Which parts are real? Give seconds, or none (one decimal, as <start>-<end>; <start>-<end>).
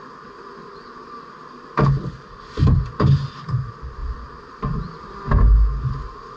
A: 0.0-4.0; 5.2-6.4